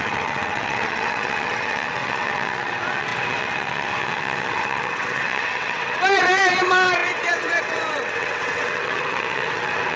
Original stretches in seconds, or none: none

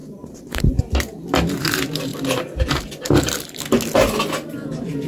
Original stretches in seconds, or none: 0.8-5.1